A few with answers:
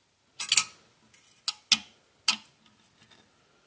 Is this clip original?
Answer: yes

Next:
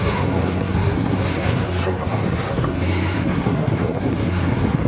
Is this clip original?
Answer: no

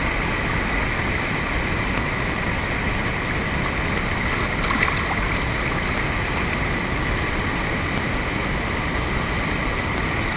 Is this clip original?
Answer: yes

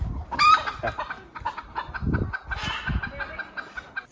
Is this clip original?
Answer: yes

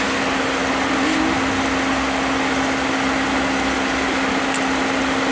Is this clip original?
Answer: yes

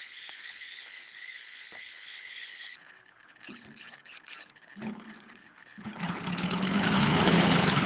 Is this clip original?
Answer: no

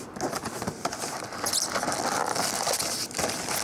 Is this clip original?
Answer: yes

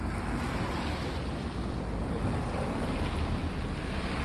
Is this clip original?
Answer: yes